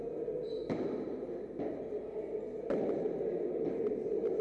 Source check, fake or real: real